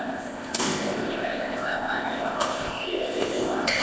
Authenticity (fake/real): fake